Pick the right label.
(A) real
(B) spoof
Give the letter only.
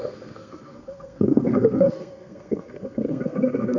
B